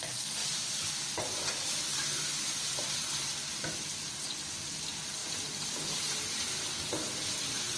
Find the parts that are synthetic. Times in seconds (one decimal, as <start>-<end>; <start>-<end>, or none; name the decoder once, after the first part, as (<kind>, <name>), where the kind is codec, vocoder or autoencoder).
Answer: 0.4-1.2 (vocoder, BigVGAN v2); 5.2-6.4